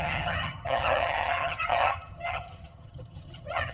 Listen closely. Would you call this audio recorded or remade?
remade